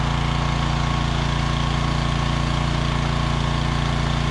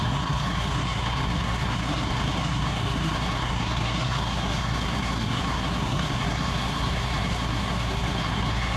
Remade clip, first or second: second